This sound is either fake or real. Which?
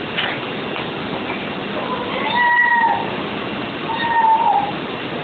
real